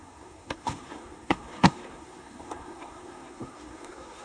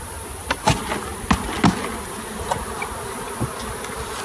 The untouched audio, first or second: second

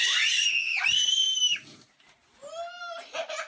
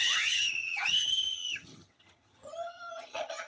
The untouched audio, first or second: first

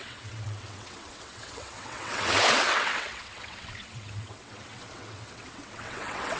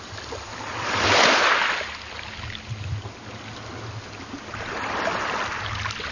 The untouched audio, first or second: second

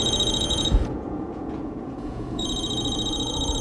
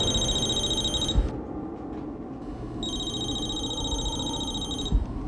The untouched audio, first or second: second